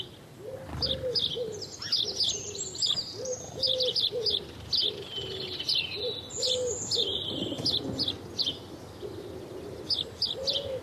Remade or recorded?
recorded